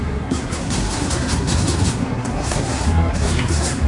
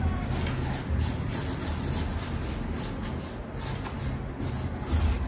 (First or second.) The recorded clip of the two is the second